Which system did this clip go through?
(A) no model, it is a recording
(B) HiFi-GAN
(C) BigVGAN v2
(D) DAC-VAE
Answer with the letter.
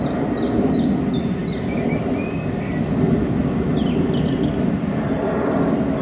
A